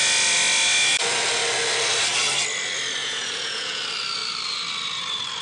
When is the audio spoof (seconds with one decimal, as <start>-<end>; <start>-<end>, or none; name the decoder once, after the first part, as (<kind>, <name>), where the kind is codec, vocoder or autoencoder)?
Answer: 3.0-3.8 (vocoder, Vocos)

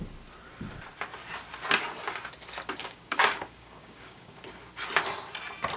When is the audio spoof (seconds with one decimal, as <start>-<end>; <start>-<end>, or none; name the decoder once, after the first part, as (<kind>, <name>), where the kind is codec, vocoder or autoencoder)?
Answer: 2.8-4.4 (codec, DAC)

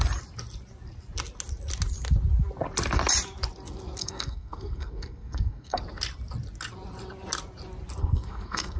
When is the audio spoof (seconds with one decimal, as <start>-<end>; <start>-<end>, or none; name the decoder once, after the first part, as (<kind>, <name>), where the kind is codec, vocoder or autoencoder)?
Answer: 4.0-5.8 (codec, SNAC); 8.0-8.8

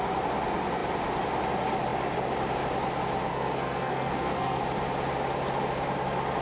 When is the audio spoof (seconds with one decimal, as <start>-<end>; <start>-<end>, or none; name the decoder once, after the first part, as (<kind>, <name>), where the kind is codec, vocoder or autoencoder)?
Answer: 3.3-4.6 (codec, SNAC)